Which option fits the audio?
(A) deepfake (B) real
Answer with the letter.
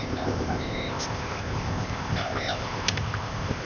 A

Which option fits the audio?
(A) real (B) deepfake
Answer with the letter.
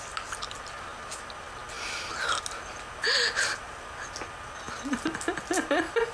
A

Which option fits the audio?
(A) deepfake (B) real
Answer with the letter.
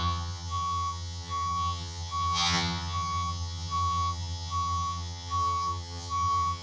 A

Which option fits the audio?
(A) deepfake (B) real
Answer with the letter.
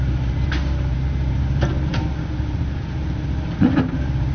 A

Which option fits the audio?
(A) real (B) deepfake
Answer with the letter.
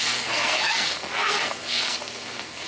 B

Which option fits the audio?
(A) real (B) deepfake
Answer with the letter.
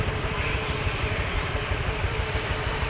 B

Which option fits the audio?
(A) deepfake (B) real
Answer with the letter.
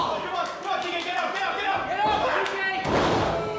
B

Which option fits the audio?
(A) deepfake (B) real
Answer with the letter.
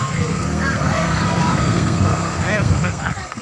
A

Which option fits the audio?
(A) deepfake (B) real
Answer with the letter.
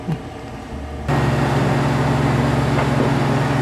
B